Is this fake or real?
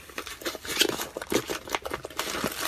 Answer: real